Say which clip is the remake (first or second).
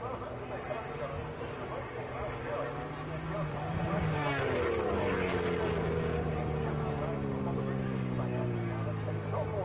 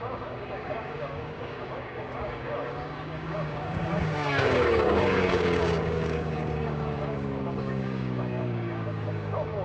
second